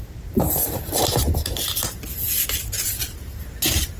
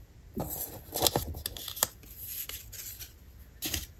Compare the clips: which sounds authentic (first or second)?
second